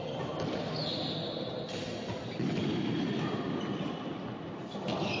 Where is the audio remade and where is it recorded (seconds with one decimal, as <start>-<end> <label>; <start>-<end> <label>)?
0.0-5.2 recorded